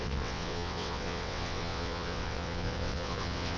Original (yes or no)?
no